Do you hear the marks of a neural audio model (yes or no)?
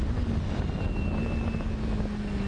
no